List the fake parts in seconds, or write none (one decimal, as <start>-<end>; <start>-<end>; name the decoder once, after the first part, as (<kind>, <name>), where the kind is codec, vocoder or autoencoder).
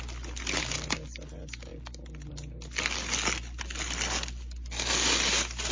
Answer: none